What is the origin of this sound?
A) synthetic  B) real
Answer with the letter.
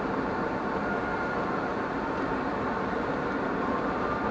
A